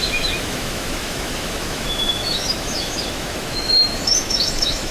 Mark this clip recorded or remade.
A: remade